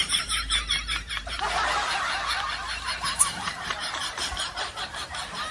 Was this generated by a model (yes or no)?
yes